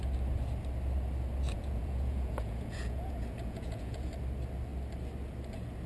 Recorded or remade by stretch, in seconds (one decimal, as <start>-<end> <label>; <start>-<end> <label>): 0.0-1.5 recorded; 1.5-4.1 remade; 4.1-5.9 recorded